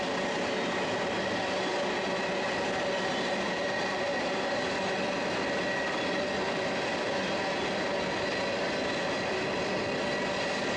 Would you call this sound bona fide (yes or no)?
yes